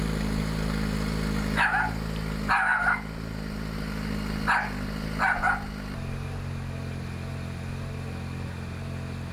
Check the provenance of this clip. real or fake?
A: real